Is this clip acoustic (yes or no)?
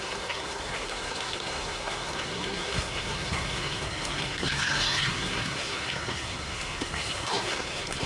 no